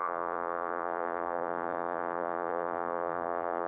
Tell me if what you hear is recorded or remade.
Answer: remade